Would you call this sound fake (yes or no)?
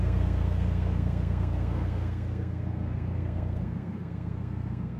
yes